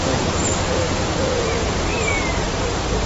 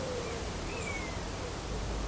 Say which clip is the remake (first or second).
first